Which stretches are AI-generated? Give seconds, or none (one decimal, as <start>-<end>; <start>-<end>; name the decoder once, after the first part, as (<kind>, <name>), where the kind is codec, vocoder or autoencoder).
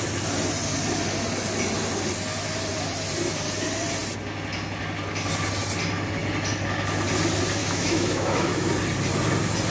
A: 7.6-8.7 (autoencoder, DAC-VAE)